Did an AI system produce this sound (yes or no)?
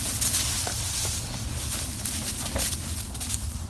no